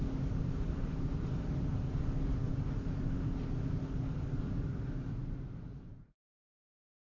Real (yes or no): yes